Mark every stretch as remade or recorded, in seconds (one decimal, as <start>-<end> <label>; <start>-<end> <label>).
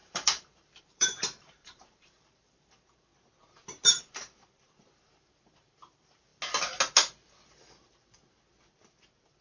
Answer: 0.0-3.1 remade; 3.1-3.9 recorded; 3.9-6.3 remade; 6.3-9.4 recorded